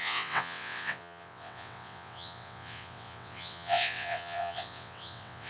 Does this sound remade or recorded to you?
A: remade